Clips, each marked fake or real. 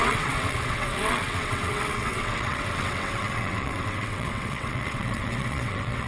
fake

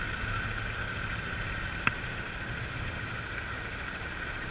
real